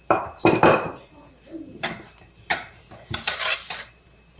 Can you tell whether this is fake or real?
fake